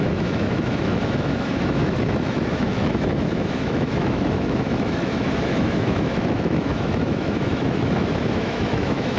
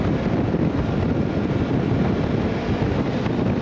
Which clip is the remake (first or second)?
first